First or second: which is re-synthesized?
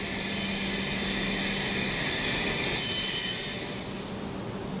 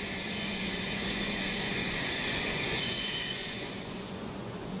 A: second